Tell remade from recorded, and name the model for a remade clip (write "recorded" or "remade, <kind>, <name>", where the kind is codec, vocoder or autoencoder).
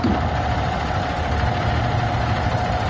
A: recorded